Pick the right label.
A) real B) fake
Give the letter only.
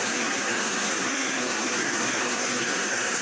B